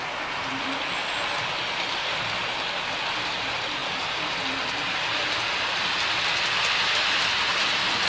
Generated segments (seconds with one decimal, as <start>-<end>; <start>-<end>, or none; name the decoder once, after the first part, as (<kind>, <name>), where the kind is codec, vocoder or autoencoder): none